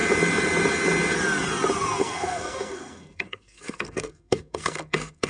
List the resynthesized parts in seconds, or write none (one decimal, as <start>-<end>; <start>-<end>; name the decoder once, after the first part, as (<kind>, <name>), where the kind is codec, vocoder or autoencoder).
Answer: 2.0-5.3 (codec, SNAC)